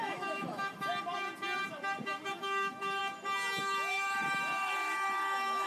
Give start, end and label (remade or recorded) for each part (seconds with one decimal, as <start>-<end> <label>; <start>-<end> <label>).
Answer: 0.0-0.9 remade; 0.9-2.3 recorded; 2.3-3.0 remade; 3.0-3.6 recorded; 3.6-5.7 remade